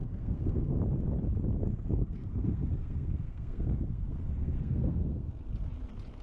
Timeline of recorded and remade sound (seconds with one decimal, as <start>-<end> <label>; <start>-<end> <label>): 0.0-0.8 remade; 0.8-1.6 recorded; 1.6-5.3 remade; 5.3-6.2 recorded